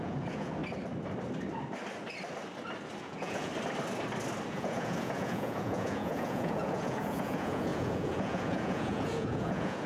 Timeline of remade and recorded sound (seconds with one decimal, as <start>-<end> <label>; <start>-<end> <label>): 0.0-0.6 remade; 0.6-3.0 recorded; 3.0-3.5 remade; 3.5-4.5 recorded; 4.5-9.9 remade